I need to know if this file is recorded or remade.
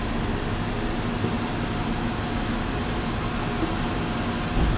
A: recorded